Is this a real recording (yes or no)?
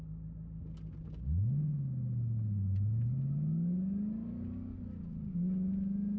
yes